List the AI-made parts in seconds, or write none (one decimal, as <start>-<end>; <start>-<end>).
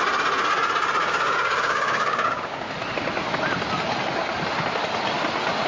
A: 1.0-2.7